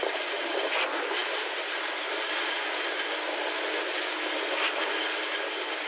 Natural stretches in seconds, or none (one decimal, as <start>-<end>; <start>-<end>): 0.0-5.9